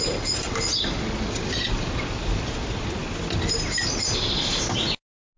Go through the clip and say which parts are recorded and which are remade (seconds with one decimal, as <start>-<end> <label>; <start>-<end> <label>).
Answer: 0.0-5.4 recorded